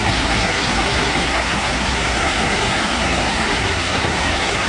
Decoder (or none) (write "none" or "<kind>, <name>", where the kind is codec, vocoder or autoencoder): codec, SNAC